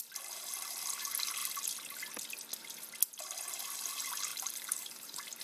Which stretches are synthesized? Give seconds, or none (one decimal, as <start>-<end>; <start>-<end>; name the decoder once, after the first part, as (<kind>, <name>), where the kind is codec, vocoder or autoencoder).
4.3-5.4 (vocoder, BigVGAN v2)